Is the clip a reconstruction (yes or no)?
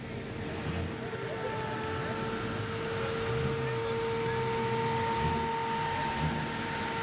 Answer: no